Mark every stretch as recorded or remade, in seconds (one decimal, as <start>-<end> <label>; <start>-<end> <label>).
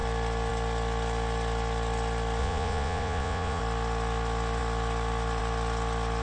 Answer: 0.0-2.4 recorded; 2.4-3.6 remade; 3.6-6.2 recorded